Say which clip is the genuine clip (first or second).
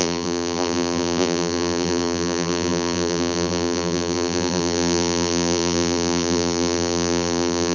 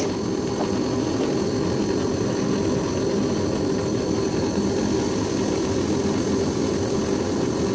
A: second